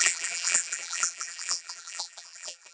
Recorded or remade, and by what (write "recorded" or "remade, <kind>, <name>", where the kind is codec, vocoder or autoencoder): remade, vocoder, BigVGAN v2